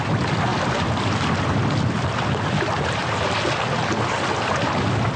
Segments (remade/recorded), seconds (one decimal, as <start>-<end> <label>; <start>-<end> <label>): 0.0-5.2 recorded